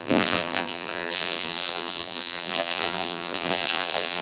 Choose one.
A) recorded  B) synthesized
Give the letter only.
B